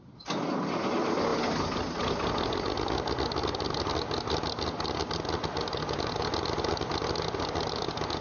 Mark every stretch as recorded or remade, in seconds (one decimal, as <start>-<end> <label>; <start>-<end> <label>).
0.0-8.2 recorded